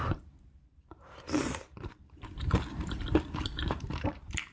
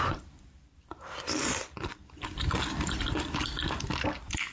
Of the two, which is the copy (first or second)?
first